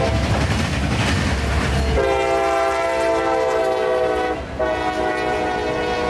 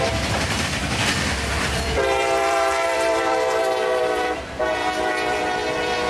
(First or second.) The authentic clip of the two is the first